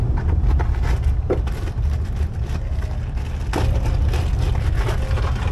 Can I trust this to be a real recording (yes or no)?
yes